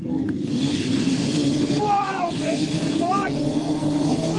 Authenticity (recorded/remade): remade